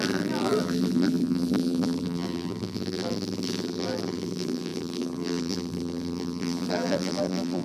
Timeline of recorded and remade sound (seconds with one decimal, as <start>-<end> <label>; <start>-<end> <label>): 0.0-7.6 remade